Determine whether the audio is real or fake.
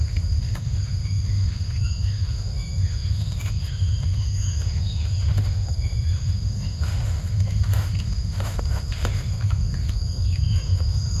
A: fake